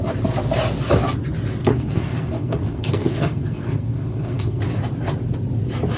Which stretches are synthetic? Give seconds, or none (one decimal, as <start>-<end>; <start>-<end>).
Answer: 1.6-4.6